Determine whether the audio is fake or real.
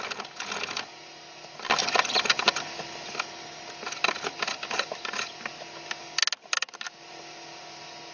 real